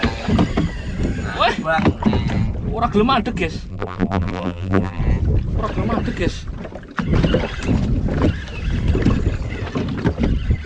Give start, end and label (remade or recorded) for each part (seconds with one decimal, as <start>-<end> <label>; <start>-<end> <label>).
0.0-3.7 recorded; 3.7-5.0 remade; 5.0-10.7 recorded